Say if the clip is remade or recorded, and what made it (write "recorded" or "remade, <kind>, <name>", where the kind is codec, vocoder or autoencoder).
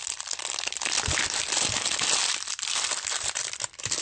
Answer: remade, vocoder, BigVGAN v2